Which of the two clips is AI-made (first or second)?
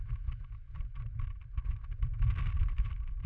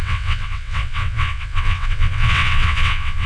second